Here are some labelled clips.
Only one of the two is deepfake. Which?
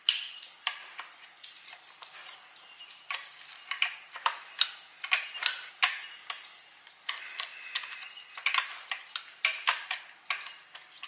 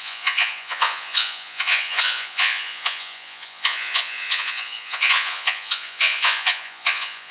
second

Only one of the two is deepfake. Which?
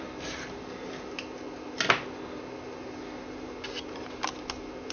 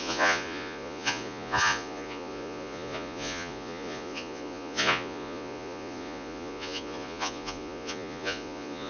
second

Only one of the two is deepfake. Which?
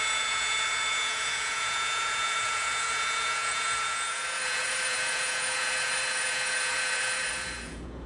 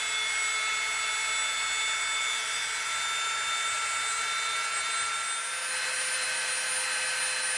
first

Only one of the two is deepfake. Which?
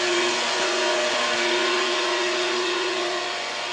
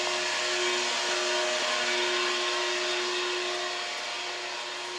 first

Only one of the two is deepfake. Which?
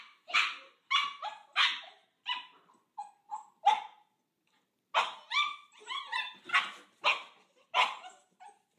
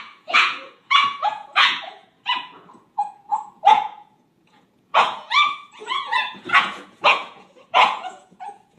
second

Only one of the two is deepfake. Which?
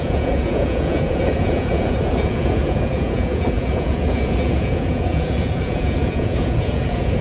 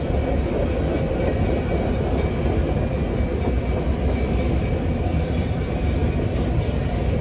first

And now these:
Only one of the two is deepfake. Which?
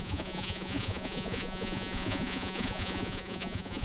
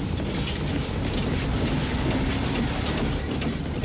first